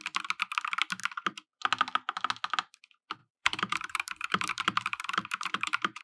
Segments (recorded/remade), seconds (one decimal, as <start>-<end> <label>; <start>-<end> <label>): 0.0-3.2 recorded; 3.2-6.0 remade